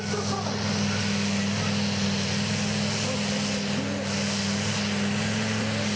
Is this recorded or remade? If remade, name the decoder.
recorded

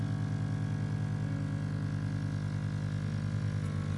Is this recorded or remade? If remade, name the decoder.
recorded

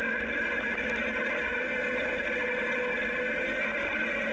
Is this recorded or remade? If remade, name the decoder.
recorded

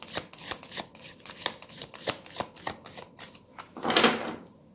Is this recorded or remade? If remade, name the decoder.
recorded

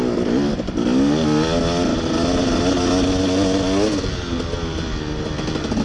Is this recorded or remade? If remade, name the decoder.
recorded